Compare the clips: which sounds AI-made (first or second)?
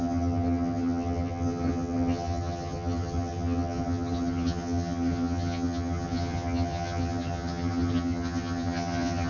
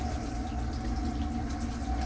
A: first